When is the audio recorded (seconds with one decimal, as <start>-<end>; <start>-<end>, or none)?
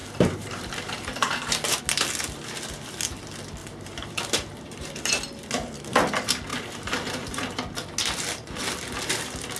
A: 1.8-3.6; 5.2-6.5; 7.4-9.6